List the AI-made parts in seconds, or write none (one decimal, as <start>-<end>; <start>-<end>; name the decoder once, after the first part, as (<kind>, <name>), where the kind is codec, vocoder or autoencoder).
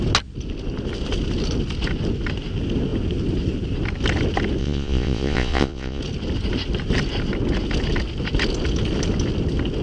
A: 4.6-6.0 (vocoder, Vocos)